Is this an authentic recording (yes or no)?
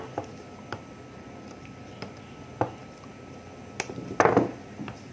yes